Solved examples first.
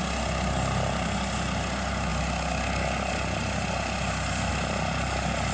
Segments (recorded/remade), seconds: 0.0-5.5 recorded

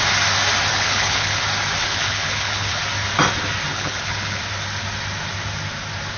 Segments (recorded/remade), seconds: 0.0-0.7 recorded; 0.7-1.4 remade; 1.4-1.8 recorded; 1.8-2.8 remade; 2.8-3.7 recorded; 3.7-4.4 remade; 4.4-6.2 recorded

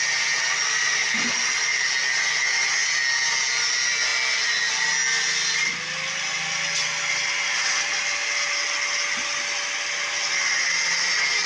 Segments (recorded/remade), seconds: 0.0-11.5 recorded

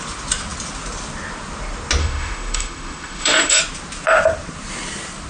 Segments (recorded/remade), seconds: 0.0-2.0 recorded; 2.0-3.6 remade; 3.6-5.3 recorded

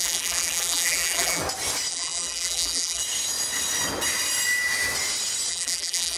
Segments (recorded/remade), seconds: 0.0-1.4 remade; 1.4-1.9 recorded; 1.9-3.0 remade; 3.0-5.5 recorded; 5.5-6.2 remade

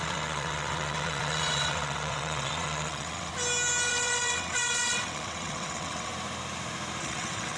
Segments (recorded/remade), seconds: 0.0-3.3 remade; 3.3-3.9 recorded; 3.9-6.1 remade; 6.1-7.0 recorded; 7.0-7.6 remade

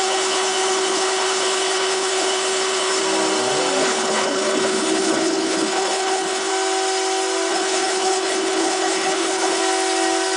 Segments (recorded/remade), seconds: 0.0-3.0 remade; 3.0-3.8 recorded; 3.8-6.5 remade; 6.5-7.5 recorded; 7.5-9.6 remade; 9.6-10.4 recorded

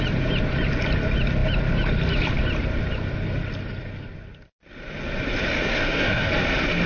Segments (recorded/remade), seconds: 0.0-5.7 recorded; 5.7-6.3 remade; 6.3-6.9 recorded